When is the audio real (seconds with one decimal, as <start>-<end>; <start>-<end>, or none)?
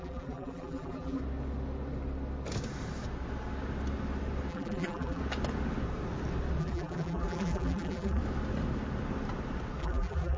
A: 1.2-4.5; 5.2-6.6; 8.2-9.8